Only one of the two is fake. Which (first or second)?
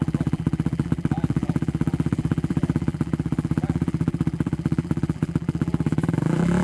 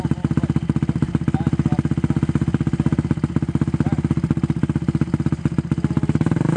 first